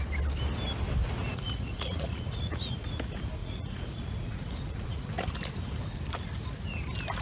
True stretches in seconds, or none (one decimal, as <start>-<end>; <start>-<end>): 0.0-1.0; 2.9-3.4; 5.1-7.2